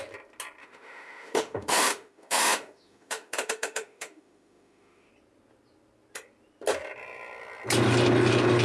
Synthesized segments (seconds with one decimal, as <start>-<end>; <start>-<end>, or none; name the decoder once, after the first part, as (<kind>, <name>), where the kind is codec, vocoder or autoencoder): 0.6-5.1 (autoencoder, DAC-VAE)